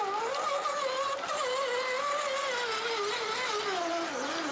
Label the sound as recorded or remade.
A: recorded